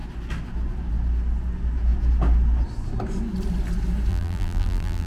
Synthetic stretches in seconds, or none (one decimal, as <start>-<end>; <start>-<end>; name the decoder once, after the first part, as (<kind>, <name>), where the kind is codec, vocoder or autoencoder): 4.1-5.1 (vocoder, BigVGAN v2)